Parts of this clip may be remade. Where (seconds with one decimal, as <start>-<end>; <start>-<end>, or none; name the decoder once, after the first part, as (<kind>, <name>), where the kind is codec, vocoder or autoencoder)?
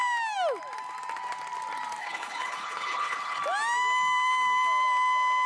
2.0-3.4 (codec, HILCodec)